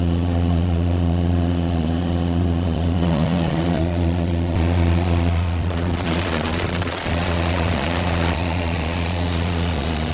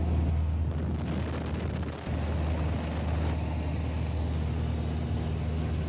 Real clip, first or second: second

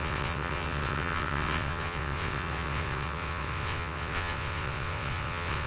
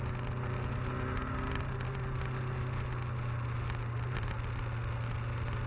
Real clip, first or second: second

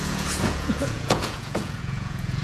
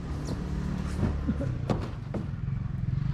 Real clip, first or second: second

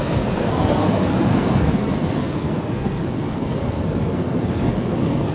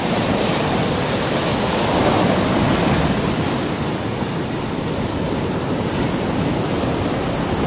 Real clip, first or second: second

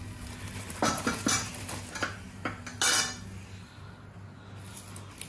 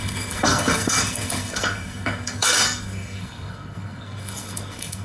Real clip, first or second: first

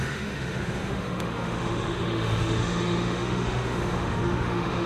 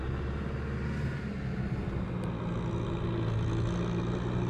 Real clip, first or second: second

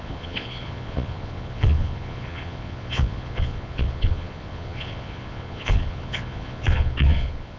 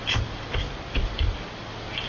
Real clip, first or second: second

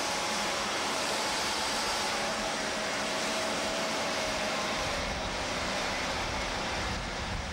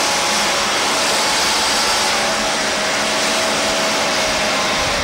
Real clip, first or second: second